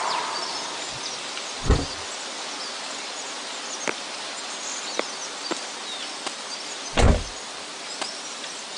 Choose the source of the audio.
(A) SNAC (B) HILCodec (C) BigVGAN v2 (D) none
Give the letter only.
D